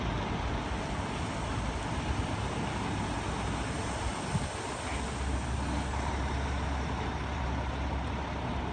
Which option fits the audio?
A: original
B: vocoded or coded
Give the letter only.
A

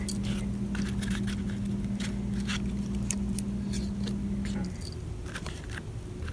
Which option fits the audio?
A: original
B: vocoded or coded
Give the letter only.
A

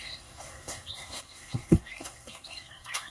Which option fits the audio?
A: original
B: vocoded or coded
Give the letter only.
B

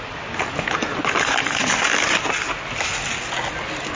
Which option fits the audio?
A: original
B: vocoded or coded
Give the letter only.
A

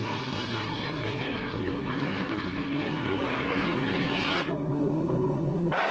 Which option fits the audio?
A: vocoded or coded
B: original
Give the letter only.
A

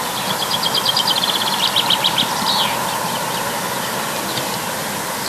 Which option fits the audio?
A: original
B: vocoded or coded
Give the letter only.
A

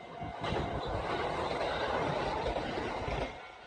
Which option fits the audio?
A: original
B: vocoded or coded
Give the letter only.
A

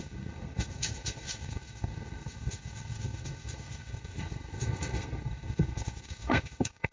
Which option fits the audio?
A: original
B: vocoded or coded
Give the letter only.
B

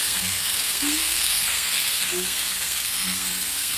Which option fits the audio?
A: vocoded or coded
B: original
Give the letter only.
A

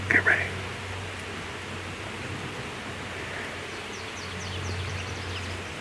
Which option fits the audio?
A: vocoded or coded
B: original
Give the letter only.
B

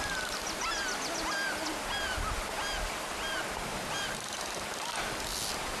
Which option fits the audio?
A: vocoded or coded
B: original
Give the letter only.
B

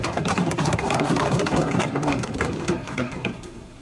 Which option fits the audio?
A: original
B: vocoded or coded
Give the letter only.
B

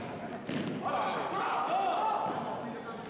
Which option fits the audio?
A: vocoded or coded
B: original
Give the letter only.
B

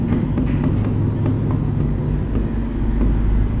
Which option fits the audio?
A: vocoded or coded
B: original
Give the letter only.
B